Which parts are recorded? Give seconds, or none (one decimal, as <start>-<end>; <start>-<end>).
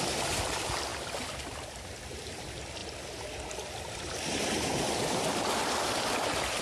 0.0-0.9; 1.9-2.8